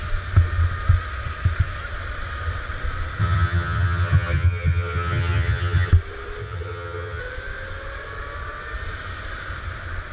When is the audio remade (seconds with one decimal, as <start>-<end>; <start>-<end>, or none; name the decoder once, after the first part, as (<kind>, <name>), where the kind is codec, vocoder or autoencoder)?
3.2-5.9 (vocoder, HiFi-GAN); 6.4-7.2